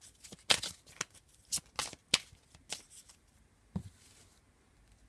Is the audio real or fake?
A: real